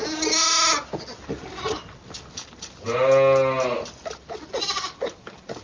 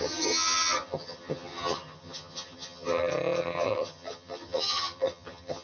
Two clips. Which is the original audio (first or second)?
first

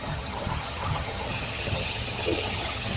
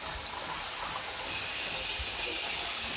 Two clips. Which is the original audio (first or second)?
second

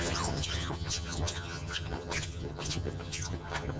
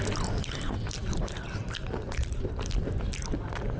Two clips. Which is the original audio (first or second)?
second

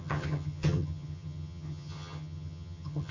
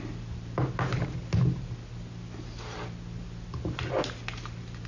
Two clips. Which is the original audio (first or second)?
second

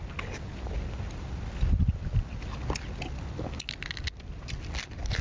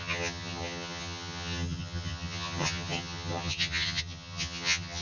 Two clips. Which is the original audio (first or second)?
first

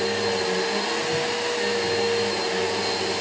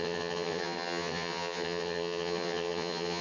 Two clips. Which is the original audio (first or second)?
first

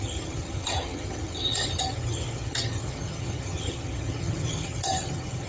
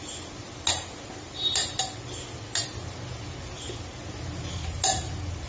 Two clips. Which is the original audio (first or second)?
second